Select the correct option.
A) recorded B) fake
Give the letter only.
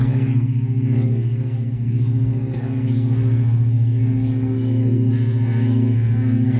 B